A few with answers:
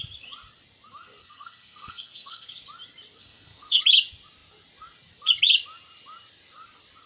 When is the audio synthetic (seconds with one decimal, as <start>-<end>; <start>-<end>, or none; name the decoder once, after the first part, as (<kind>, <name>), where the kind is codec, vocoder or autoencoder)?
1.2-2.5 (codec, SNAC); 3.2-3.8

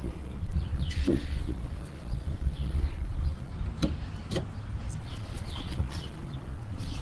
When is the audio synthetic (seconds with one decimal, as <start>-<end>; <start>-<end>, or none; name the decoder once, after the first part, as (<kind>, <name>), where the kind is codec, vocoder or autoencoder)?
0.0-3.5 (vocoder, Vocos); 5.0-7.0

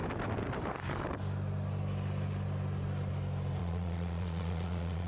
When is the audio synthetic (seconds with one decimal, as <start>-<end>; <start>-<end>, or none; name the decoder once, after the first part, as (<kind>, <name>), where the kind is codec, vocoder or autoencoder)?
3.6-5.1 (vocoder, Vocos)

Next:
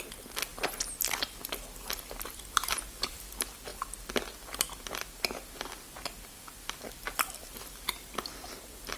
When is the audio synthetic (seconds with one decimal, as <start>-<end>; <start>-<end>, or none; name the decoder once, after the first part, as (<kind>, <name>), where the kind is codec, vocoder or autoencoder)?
0.0-0.5 (vocoder, BigVGAN v2); 2.1-3.7; 5.5-9.0

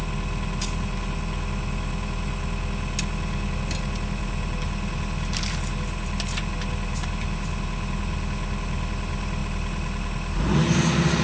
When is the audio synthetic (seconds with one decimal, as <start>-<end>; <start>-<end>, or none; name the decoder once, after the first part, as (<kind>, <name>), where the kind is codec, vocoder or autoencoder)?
none

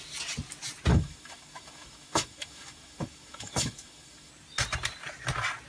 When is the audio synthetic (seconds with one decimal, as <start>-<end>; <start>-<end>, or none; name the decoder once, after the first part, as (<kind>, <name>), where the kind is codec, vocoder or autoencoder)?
0.9-4.3 (autoencoder, DAC-VAE)

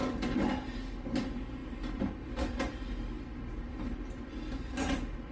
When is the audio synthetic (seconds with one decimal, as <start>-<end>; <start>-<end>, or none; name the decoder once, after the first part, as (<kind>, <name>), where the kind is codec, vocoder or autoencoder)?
1.6-3.8 (vocoder, BigVGAN v2)

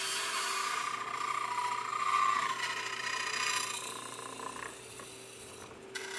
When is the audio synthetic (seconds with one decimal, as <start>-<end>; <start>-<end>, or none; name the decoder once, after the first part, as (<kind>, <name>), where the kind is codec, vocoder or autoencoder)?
none